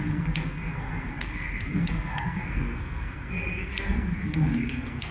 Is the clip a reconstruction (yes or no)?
yes